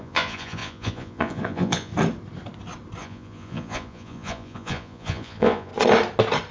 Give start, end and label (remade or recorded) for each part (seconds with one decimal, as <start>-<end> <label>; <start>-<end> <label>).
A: 0.0-1.9 remade; 1.9-3.0 recorded; 3.0-5.7 remade; 5.7-6.5 recorded